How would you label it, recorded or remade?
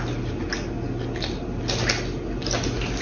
recorded